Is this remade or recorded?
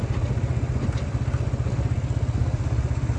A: recorded